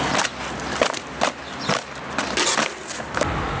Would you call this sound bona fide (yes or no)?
yes